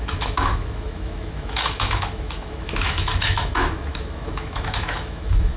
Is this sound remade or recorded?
remade